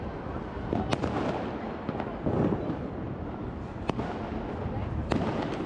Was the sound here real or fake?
real